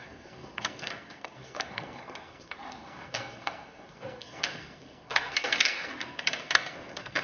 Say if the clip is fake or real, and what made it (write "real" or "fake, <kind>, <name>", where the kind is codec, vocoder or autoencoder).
fake, codec, SNAC